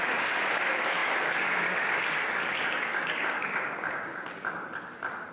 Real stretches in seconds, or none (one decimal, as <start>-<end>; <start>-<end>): 4.1-5.3